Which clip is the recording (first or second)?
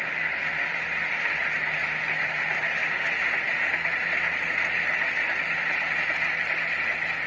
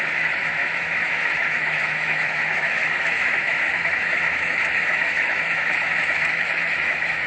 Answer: first